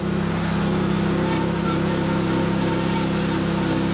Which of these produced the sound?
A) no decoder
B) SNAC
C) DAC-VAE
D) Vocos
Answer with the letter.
A